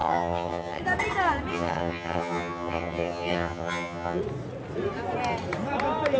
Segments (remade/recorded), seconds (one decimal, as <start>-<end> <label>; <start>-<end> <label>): 0.0-0.8 remade; 0.8-1.5 recorded; 1.5-4.2 remade; 4.2-6.2 recorded